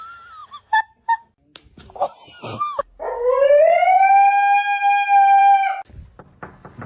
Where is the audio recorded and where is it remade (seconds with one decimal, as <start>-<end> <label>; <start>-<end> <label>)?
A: 0.0-6.9 recorded